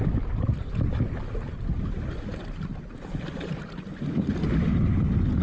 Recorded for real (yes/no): yes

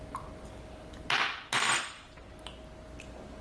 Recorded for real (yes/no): yes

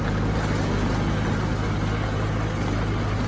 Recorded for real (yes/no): yes